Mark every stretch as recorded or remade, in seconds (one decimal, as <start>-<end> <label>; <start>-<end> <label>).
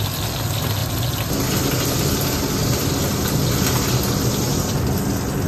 0.0-5.5 recorded